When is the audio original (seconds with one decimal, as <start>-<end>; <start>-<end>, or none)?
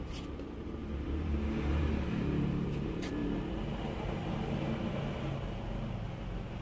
3.2-6.6